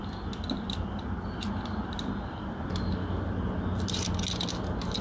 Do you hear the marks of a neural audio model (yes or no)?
no